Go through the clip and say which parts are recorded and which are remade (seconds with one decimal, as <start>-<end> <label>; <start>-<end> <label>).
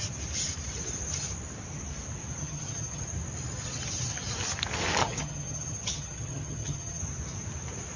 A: 0.0-2.4 recorded; 2.4-3.0 remade; 3.0-5.0 recorded; 5.0-7.0 remade; 7.0-8.0 recorded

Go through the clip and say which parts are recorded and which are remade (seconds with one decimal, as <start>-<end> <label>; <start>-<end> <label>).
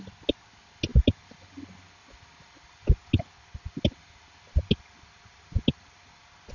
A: 0.0-6.5 recorded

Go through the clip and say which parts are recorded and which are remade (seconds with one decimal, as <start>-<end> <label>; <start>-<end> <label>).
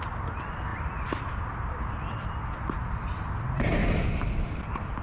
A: 0.0-5.0 recorded